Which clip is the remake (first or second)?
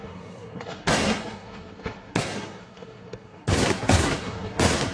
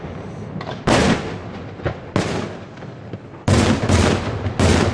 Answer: first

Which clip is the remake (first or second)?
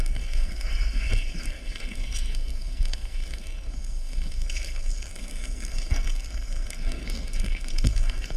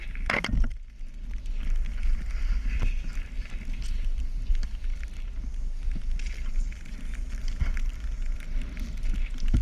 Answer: first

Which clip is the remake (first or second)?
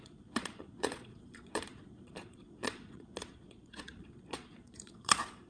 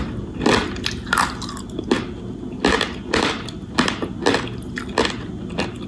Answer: first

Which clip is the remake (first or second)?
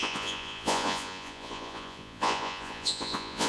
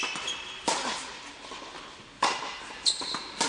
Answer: first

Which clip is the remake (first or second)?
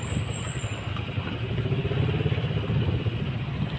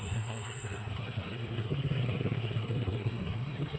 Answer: second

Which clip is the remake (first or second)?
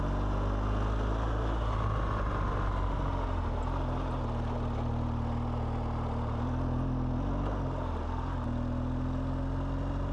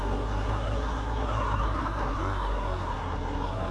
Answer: second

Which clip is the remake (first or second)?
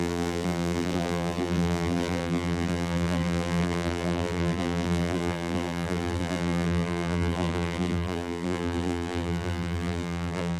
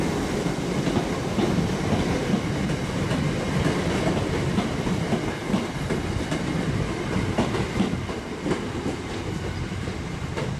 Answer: first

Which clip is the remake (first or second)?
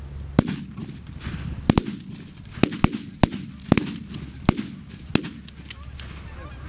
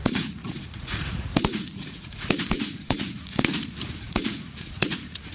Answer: second